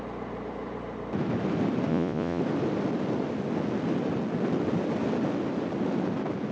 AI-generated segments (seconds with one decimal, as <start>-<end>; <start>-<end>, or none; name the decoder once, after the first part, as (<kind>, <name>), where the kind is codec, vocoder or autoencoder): 1.9-2.4 (vocoder, Vocos)